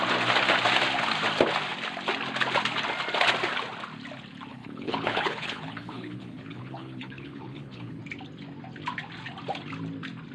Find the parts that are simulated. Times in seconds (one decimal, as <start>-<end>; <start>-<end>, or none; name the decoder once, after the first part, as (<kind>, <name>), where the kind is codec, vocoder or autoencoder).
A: 4.5-8.0 (codec, HILCodec)